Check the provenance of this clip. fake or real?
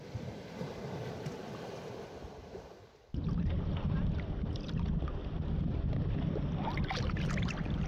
real